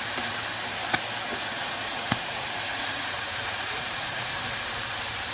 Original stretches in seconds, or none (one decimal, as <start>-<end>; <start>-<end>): 0.0-1.3; 4.3-5.3